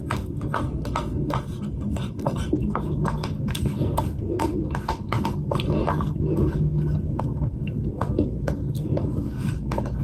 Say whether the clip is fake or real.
fake